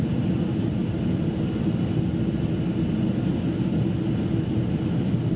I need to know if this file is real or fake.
real